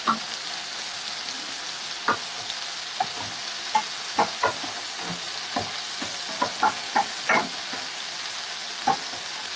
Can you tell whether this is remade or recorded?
recorded